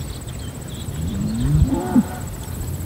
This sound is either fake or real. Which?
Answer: real